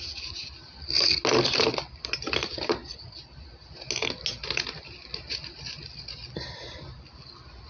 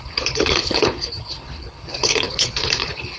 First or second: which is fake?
second